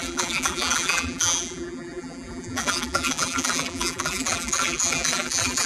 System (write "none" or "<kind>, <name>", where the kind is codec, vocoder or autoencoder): vocoder, BigVGAN v2